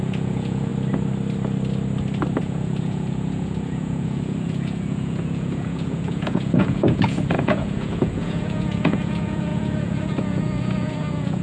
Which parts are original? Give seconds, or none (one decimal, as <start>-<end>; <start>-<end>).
0.7-2.4